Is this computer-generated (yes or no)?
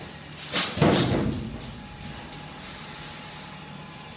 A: no